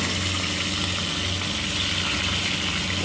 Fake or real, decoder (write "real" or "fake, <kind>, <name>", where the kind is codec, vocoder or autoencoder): real